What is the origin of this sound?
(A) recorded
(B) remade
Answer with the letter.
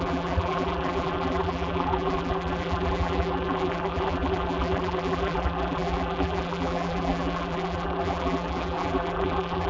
B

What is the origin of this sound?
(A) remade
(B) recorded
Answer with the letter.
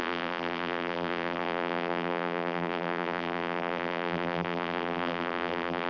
A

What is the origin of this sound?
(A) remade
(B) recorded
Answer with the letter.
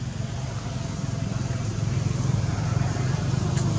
B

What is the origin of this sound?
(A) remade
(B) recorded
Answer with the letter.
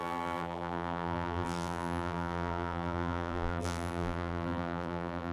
A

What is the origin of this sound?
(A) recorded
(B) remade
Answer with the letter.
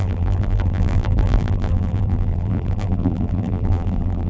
B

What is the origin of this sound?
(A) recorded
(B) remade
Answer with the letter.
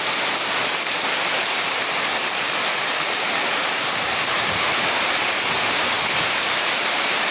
B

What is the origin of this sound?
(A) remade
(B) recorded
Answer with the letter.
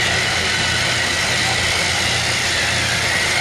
B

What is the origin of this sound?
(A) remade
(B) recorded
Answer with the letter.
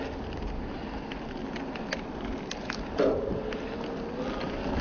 B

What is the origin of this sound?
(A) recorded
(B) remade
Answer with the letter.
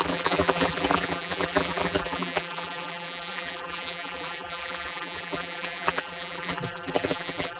B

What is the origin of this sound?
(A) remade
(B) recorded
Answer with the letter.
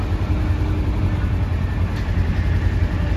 B